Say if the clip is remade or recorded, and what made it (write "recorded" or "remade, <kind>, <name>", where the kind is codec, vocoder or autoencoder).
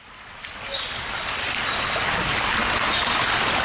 recorded